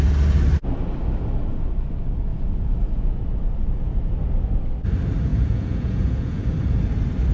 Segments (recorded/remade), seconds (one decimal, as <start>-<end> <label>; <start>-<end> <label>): 0.0-2.3 recorded; 2.3-3.2 remade; 3.2-3.6 recorded; 3.6-4.1 remade; 4.1-5.3 recorded; 5.3-6.5 remade; 6.5-7.3 recorded

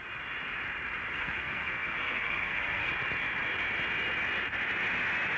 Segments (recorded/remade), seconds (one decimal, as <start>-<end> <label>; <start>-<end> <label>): 0.0-1.1 recorded; 1.1-2.9 remade; 2.9-5.4 recorded

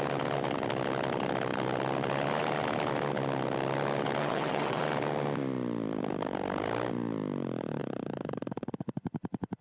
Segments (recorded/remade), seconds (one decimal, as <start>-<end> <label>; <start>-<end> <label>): 0.0-4.2 recorded; 4.2-4.8 remade; 4.8-9.6 recorded